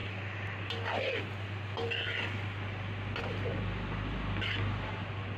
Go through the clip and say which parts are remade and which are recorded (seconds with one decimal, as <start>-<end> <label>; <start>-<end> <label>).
0.0-5.4 recorded